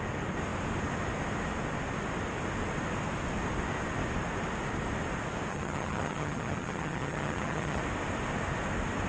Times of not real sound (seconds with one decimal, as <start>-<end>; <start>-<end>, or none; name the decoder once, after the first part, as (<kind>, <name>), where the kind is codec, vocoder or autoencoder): 5.5-7.8 (vocoder, HiFi-GAN)